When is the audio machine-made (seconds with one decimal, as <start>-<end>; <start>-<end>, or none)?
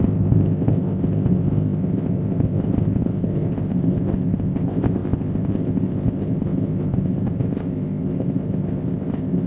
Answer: 0.0-9.5